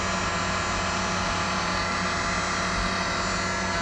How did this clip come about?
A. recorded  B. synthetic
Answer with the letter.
A